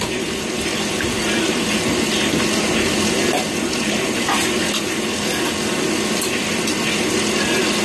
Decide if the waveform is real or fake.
real